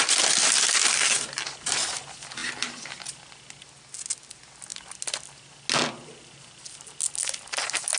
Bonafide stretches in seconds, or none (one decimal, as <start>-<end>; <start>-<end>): 0.0-8.0